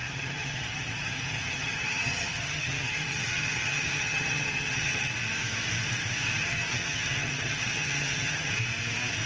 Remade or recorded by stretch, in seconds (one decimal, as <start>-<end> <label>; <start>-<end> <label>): 0.0-5.1 remade; 5.1-6.4 recorded; 6.4-8.5 remade; 8.5-9.3 recorded